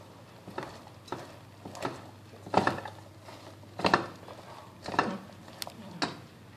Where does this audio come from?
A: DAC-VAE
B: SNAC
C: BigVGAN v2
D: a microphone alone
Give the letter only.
D